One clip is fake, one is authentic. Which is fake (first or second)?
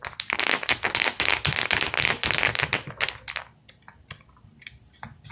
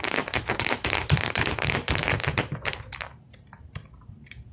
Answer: second